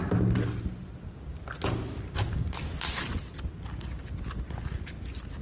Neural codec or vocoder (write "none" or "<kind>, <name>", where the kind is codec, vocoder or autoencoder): none